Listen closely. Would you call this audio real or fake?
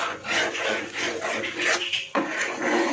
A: fake